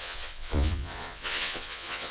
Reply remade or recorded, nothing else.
remade